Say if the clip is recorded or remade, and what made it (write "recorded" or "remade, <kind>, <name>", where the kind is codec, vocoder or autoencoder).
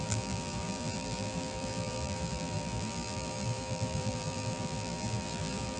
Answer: remade, vocoder, BigVGAN v2